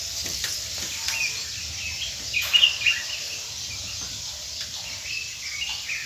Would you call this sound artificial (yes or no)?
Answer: no